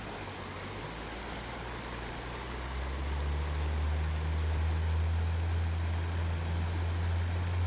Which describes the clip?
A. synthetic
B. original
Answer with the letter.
B